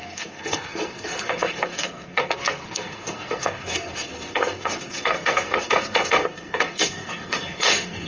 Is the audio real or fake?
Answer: fake